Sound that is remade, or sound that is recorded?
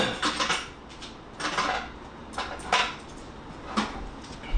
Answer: recorded